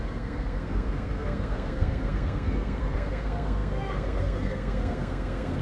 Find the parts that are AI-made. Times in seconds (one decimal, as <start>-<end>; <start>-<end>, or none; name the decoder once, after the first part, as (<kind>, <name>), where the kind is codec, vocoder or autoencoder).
0.0-5.6 (codec, SNAC)